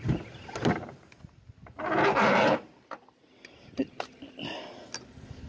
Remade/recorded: recorded